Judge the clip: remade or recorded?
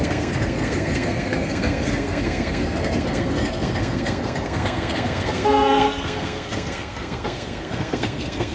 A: remade